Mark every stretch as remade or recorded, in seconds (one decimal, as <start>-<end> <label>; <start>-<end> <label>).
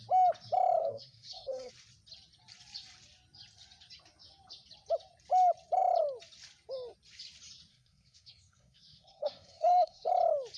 0.0-0.8 recorded; 0.8-1.7 remade; 1.7-7.7 recorded; 7.7-10.1 remade; 10.1-10.6 recorded